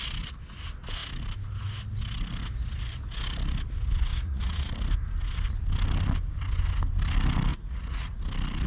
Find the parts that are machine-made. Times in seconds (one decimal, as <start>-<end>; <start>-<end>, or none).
4.1-4.7; 7.5-8.2